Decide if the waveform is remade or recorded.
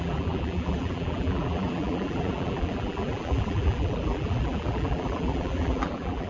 remade